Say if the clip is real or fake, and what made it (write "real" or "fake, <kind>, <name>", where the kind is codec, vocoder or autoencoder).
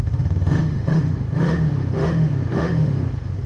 fake, autoencoder, DAC-VAE